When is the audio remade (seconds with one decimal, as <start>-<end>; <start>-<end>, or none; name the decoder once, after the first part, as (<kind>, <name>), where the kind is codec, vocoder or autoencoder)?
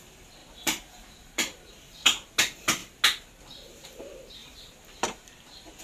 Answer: 0.4-2.3 (vocoder, BigVGAN v2); 4.4-5.8